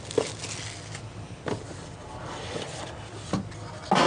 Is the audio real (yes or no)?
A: yes